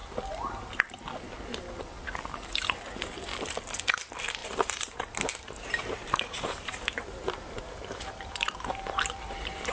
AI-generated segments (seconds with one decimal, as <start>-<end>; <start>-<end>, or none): 4.4-9.7